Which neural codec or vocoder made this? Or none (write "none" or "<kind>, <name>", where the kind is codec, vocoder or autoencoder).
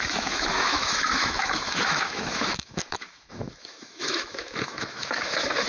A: autoencoder, DAC-VAE